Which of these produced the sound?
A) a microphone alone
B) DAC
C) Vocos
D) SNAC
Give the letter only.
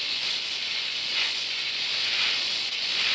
C